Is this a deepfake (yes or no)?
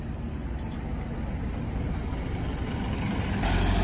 no